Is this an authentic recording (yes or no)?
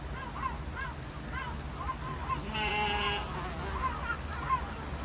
yes